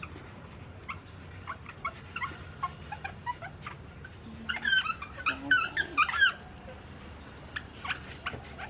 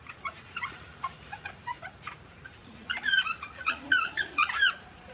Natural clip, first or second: first